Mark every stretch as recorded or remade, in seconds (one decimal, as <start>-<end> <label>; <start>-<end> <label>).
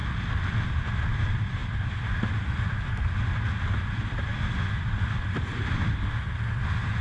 0.0-7.0 recorded